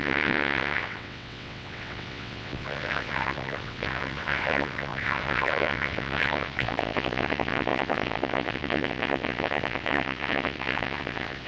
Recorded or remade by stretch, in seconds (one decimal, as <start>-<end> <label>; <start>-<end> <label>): 0.0-11.5 remade